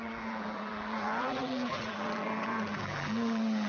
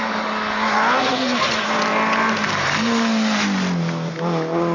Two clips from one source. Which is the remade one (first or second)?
first